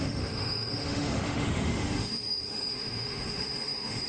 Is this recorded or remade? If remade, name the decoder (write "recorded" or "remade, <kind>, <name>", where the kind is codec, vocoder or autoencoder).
remade, autoencoder, DAC-VAE